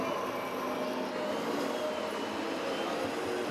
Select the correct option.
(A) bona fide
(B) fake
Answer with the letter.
A